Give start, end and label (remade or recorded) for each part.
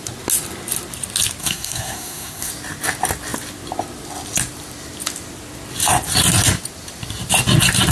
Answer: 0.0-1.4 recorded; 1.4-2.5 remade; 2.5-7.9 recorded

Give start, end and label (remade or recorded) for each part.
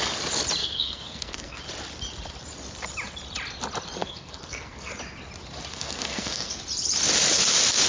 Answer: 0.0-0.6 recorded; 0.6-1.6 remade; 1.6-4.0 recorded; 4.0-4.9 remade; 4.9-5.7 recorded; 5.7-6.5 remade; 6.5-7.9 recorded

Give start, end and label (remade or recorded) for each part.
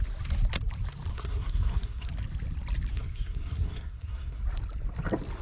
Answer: 0.0-1.1 recorded; 1.1-2.1 remade; 2.1-2.9 recorded; 2.9-4.4 remade; 4.4-5.4 recorded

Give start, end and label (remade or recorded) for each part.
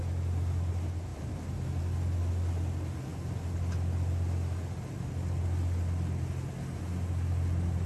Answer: 0.0-7.9 recorded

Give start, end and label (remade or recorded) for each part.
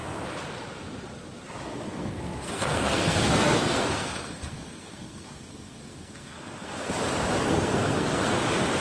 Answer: 0.0-1.7 recorded; 1.7-6.9 remade; 6.9-7.4 recorded; 7.4-8.3 remade; 8.3-8.8 recorded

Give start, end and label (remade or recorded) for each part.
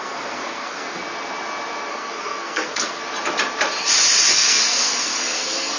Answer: 0.0-1.0 remade; 1.0-1.9 recorded; 1.9-3.0 remade; 3.0-4.3 recorded; 4.3-5.8 remade